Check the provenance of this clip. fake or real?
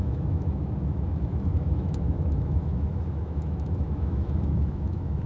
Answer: fake